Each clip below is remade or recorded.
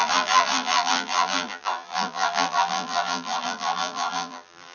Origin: remade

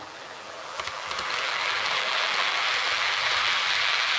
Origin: remade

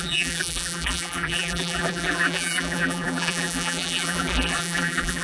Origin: remade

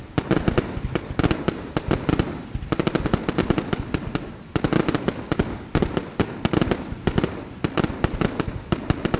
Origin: recorded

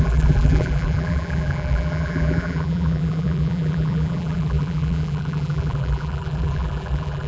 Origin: remade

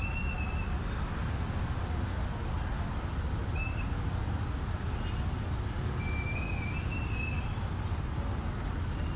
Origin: recorded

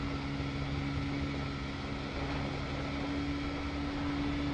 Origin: recorded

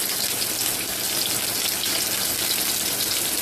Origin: recorded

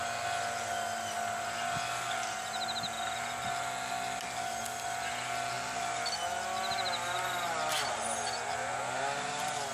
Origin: recorded